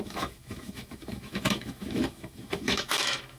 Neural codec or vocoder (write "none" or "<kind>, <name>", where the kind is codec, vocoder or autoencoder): autoencoder, DAC-VAE